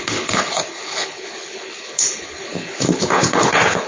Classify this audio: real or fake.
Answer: fake